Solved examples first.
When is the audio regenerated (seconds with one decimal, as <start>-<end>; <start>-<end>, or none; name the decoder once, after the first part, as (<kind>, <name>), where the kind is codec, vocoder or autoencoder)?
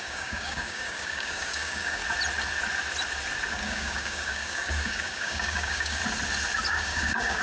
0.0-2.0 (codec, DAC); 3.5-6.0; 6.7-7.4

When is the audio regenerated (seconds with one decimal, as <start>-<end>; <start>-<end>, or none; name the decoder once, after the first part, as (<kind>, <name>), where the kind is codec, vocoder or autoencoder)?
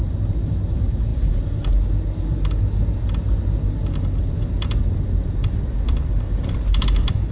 none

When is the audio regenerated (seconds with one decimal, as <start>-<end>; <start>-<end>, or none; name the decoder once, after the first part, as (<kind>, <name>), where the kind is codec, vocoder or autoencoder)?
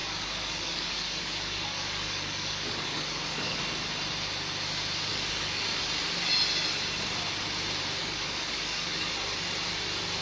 0.0-3.6 (codec, DAC); 5.1-5.8; 8.0-9.1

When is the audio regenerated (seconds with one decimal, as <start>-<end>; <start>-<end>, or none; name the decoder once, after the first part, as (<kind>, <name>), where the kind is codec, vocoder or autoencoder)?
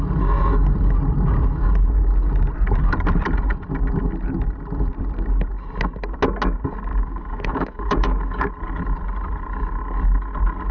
6.9-8.5 (codec, DAC)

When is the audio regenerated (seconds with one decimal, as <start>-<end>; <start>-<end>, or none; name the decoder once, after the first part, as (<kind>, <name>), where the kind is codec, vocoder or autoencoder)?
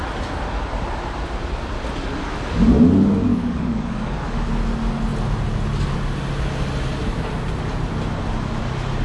3.3-4.5 (codec, DAC)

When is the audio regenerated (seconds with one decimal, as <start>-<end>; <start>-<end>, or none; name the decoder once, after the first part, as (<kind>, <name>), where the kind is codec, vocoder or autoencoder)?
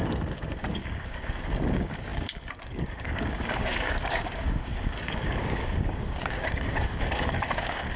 0.0-8.0 (codec, DAC)